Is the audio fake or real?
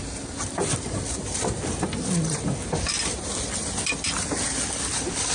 fake